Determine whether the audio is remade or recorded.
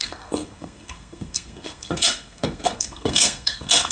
remade